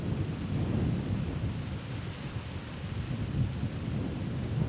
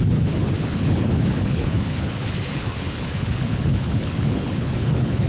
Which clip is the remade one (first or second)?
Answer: second